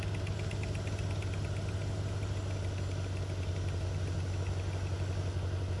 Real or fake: real